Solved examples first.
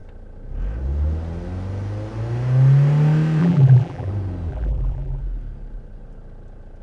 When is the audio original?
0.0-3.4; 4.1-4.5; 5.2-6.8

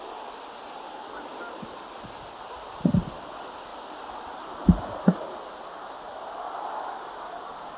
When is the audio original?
0.0-7.8

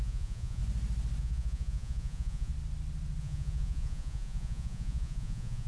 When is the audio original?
0.6-1.2; 2.5-3.2

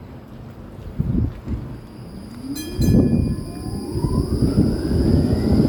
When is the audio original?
0.0-5.7

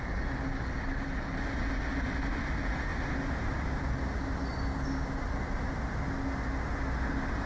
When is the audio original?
0.0-7.5

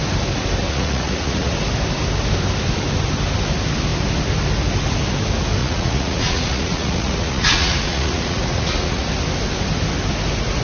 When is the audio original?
0.0-0.6; 1.5-5.6; 9.1-10.6

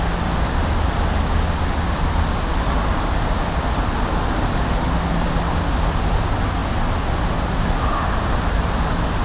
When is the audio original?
0.0-9.2

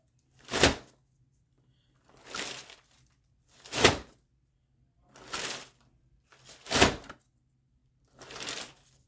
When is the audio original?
0.0-7.8